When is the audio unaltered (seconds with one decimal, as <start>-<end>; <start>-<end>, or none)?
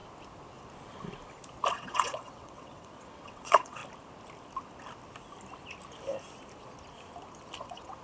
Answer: 0.0-1.7; 3.8-7.6